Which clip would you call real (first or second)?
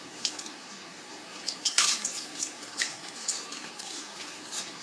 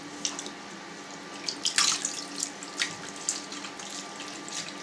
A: second